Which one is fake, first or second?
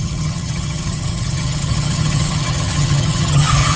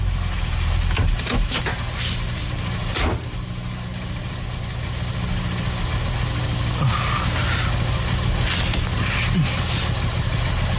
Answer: first